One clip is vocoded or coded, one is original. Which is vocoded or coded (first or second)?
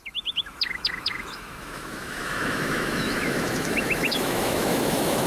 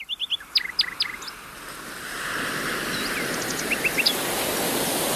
first